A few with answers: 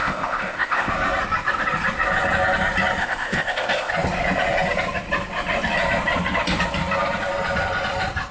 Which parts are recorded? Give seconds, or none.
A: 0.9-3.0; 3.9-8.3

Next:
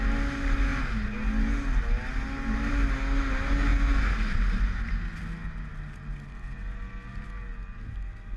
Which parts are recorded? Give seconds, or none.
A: 0.0-8.4

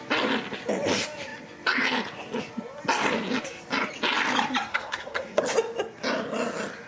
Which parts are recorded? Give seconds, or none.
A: 0.0-4.7; 5.4-6.9

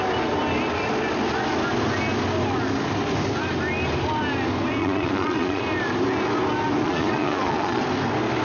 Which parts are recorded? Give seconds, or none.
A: 0.0-4.8; 5.6-6.8; 7.8-8.4

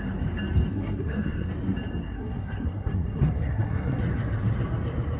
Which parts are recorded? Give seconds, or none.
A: 0.0-0.7; 1.5-2.0; 4.0-5.2

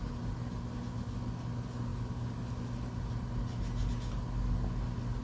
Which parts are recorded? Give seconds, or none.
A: 0.0-5.2

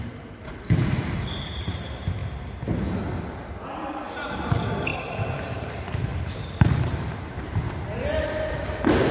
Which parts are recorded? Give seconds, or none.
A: 2.2-4.1